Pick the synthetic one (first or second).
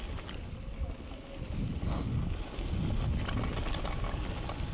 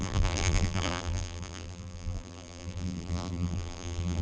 second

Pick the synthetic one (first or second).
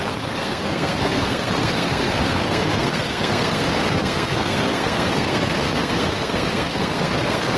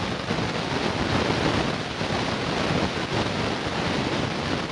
first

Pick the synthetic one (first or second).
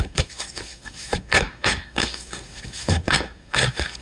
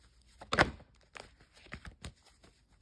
first